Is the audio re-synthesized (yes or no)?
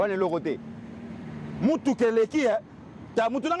yes